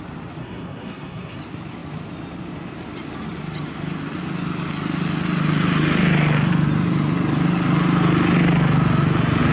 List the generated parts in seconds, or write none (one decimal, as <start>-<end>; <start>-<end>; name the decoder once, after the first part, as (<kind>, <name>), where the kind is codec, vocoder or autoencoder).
0.4-1.4 (codec, SNAC)